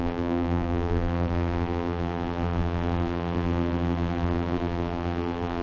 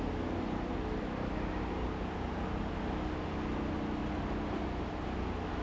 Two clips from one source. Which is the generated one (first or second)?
first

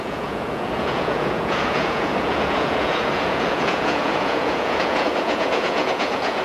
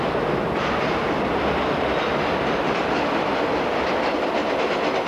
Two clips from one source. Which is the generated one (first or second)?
first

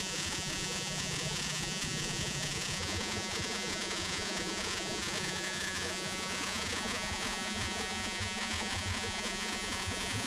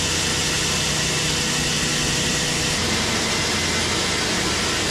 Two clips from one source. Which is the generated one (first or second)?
first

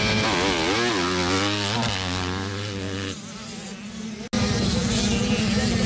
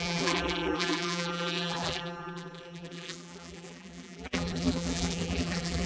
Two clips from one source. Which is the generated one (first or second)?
second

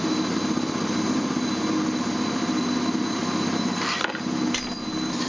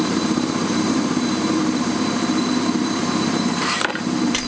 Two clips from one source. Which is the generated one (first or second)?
second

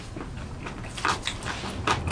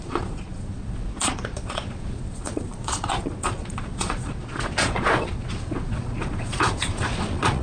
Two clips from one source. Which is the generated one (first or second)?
second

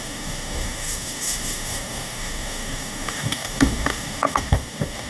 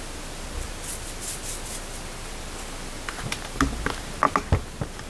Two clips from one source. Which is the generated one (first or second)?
first